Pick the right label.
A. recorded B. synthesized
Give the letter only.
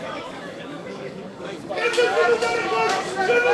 B